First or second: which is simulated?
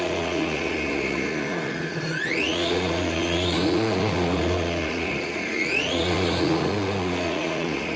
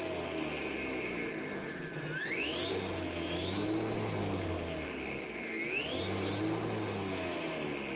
first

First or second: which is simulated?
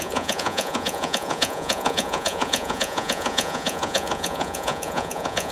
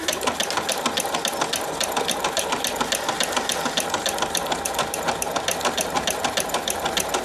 first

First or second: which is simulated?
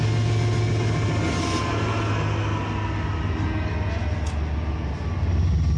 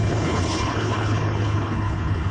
second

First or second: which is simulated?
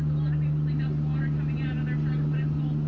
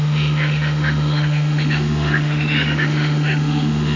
second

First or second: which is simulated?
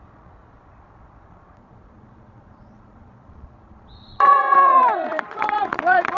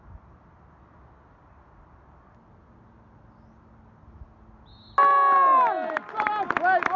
first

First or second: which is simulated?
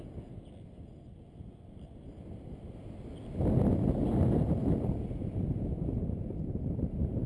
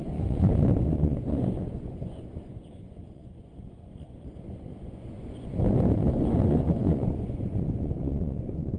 second